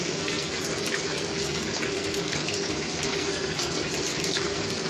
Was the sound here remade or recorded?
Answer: remade